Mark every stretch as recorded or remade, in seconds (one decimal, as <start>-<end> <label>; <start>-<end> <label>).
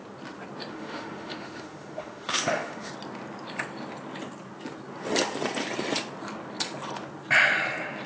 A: 0.0-0.7 recorded; 0.7-2.9 remade; 2.9-8.1 recorded